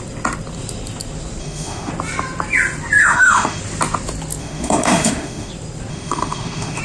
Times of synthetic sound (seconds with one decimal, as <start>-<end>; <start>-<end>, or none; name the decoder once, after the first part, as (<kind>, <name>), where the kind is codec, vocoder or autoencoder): 1.4-1.9 (autoencoder, DAC-VAE); 3.0-3.6; 4.4-5.5; 5.9-6.8